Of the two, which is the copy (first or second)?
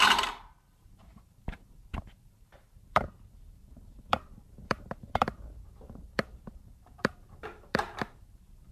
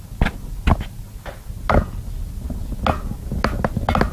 first